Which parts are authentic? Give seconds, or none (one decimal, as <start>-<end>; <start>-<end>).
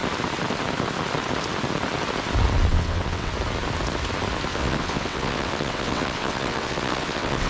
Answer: 0.0-2.7; 3.3-4.5